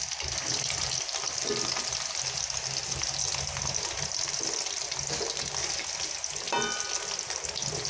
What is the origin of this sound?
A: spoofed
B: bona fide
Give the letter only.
B